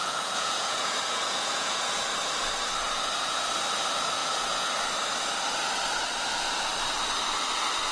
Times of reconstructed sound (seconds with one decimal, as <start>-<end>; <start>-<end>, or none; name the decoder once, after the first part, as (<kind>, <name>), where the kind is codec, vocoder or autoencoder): 0.0-1.9 (vocoder, Vocos); 4.2-4.7